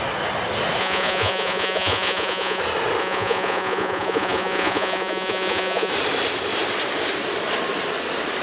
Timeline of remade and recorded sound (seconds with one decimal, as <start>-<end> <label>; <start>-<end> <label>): 0.0-0.8 recorded; 0.8-2.6 remade; 2.6-3.0 recorded; 3.0-5.9 remade; 5.9-8.4 recorded